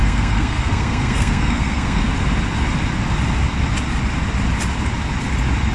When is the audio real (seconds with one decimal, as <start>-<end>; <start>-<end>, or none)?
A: 2.0-5.7